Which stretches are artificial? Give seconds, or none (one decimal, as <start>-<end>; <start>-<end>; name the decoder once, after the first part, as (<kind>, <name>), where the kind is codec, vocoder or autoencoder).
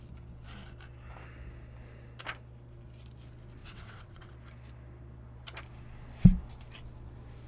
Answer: 3.6-4.3 (vocoder, WaveNeXt)